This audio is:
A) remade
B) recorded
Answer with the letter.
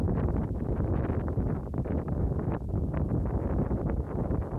B